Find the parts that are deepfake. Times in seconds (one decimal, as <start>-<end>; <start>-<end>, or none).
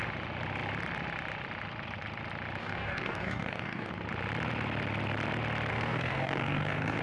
2.6-3.9; 5.7-7.0